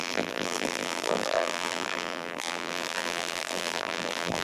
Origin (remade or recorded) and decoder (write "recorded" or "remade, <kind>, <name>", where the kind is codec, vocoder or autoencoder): remade, vocoder, BigVGAN v2